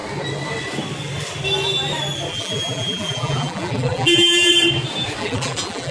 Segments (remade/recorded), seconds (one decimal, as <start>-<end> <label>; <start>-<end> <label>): 0.0-2.3 recorded; 2.3-4.5 remade; 4.5-5.2 recorded; 5.2-5.9 remade